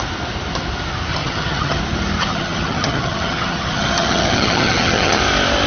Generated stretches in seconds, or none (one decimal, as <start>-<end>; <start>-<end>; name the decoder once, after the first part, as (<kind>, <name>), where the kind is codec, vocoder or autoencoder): 1.1-1.8 (vocoder, HiFi-GAN); 2.2-5.2